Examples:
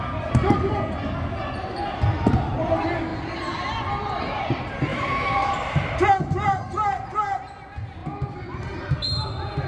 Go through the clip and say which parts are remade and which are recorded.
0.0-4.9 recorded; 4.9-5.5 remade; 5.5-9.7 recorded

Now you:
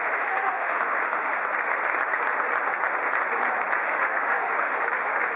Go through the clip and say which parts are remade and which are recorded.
0.0-1.4 remade; 1.4-3.8 recorded; 3.8-5.4 remade